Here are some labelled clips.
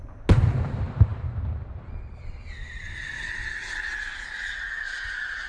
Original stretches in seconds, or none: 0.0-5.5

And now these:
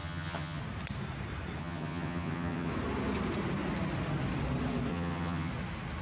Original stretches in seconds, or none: 0.6-1.6; 2.7-4.9; 5.5-6.0

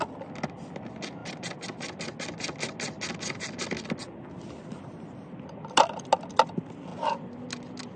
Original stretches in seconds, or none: 0.0-8.0

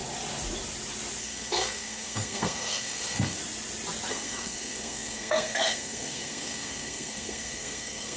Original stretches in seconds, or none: 0.0-1.2; 3.4-4.1

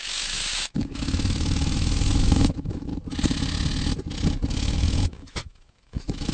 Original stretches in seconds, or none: 2.9-4.5

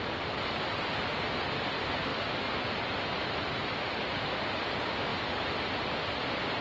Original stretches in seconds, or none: 0.0-6.6